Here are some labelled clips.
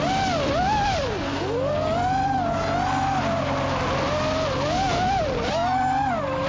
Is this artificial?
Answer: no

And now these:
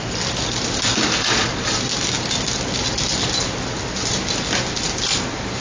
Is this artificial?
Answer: no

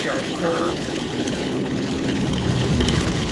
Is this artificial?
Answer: yes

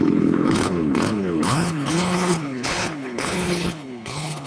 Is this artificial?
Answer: yes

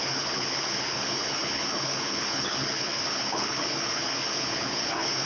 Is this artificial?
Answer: yes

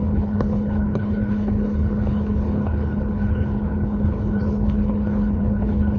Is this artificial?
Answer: yes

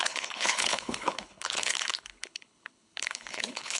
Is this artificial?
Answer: yes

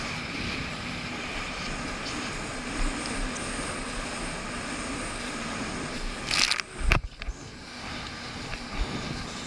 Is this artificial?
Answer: no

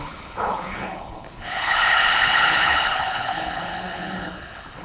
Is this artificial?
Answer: yes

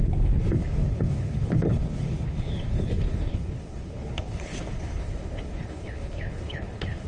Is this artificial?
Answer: yes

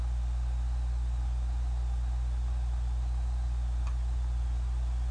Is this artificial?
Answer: no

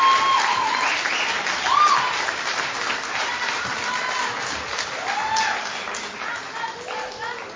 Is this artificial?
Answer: no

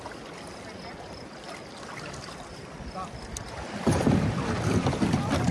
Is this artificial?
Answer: no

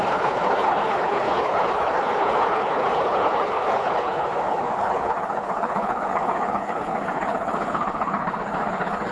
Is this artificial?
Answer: yes